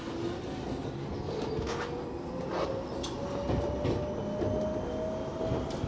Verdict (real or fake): real